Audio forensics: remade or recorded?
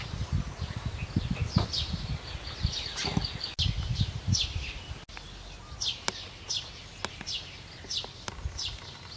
recorded